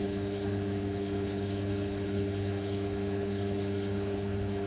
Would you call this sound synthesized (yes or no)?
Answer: yes